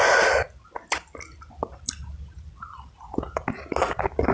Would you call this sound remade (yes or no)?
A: no